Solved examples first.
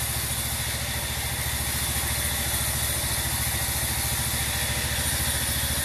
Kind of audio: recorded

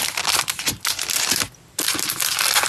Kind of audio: recorded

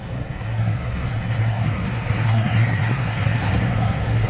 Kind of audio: remade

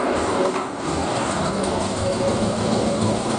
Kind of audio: remade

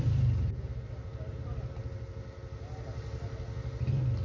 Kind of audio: recorded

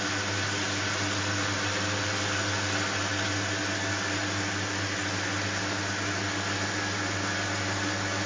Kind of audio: recorded